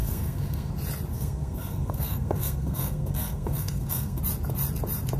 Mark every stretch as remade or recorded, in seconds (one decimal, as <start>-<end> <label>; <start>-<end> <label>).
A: 0.0-0.7 remade; 0.7-1.1 recorded; 1.1-4.2 remade; 4.2-5.2 recorded